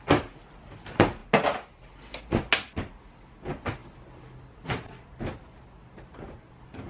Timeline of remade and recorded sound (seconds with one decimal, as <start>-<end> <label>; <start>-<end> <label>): 0.0-6.9 recorded